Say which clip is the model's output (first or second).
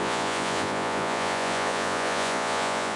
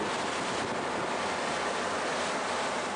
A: first